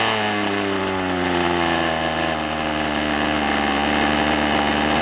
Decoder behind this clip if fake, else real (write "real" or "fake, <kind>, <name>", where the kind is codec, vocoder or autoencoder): real